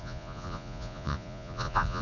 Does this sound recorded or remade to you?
remade